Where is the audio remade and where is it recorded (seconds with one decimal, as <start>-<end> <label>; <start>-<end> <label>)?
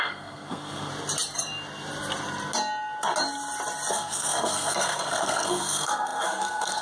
0.0-0.9 remade; 0.9-3.9 recorded; 3.9-6.8 remade